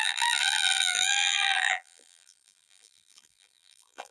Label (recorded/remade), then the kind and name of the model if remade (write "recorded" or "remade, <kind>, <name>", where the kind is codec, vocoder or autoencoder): remade, vocoder, BigVGAN v2